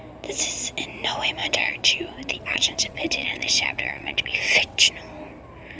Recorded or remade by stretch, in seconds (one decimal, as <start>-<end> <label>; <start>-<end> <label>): 0.0-1.4 recorded; 1.4-4.9 remade; 4.9-5.8 recorded